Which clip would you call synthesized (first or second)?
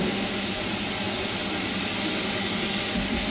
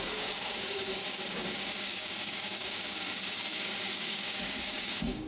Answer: second